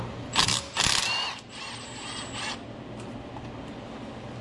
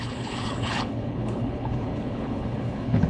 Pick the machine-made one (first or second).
second